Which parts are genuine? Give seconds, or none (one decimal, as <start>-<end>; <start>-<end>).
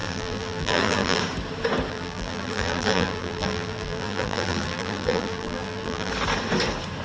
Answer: 1.2-1.9; 6.1-7.0